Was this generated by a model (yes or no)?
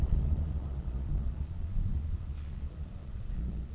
yes